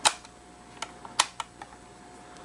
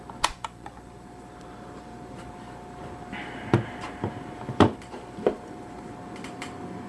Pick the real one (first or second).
first